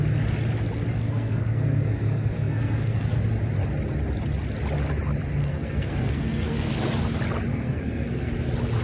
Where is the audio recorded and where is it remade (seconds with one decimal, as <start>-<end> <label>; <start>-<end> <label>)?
0.0-0.9 recorded; 0.9-3.2 remade; 3.2-5.4 recorded; 5.4-6.7 remade; 6.7-7.5 recorded; 7.5-8.3 remade; 8.3-8.8 recorded